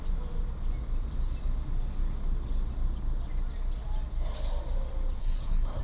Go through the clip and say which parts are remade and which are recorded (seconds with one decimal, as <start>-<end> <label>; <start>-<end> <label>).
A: 0.0-5.2 recorded; 5.2-5.8 remade